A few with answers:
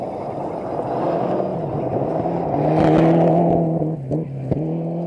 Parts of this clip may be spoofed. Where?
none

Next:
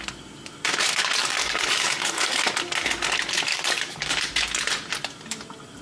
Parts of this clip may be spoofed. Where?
1.2-2.4 (codec, DAC); 3.5-4.2

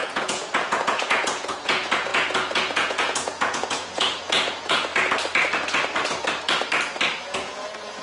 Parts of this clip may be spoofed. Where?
0.0-4.9 (vocoder, Vocos); 7.2-8.0

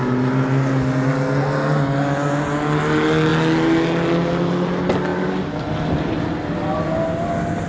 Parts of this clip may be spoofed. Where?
5.1-6.9 (vocoder, BigVGAN v2)

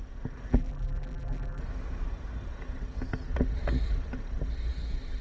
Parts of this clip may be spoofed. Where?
0.5-1.6 (vocoder, BigVGAN v2)

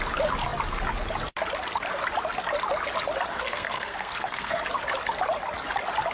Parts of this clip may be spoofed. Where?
3.3-4.6 (codec, SNAC)

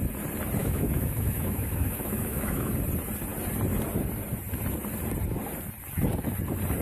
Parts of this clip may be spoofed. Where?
0.6-2.7 (autoencoder, DAC-VAE)

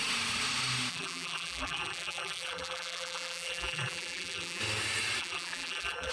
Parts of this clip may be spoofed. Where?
0.9-4.6 (vocoder, BigVGAN v2); 5.2-6.1